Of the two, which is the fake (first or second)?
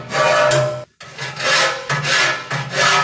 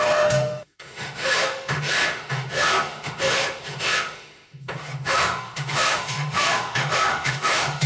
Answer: second